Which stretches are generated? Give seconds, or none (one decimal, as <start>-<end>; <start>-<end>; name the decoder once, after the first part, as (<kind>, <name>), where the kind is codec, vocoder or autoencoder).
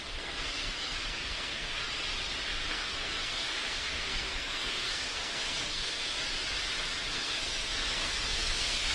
0.0-1.8 (codec, SNAC); 2.7-6.2; 7.1-8.9